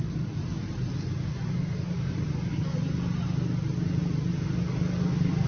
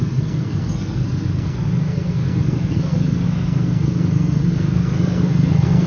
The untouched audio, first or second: first